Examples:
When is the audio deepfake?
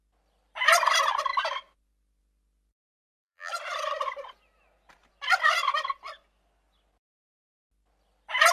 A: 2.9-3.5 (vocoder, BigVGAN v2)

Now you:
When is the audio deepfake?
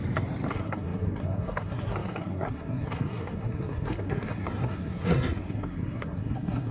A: 0.5-6.7 (codec, SNAC)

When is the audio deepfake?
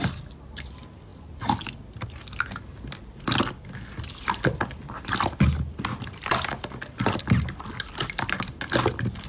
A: none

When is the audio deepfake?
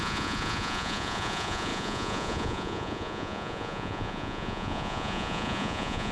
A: 0.0-6.1 (vocoder, Vocos)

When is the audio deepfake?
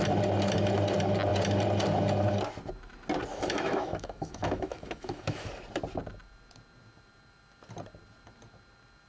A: 3.3-5.5 (autoencoder, DAC-VAE)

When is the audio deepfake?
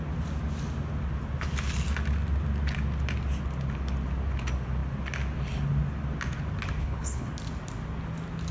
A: 6.8-7.3 (codec, HILCodec)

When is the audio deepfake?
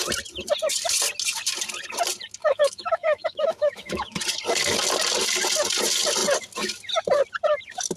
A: 2.4-4.2 (autoencoder, DAC-VAE)